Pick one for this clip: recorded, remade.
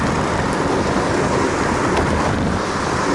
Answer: recorded